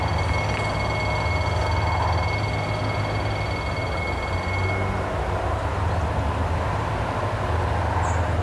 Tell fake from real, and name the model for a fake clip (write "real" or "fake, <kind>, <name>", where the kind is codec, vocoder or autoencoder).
real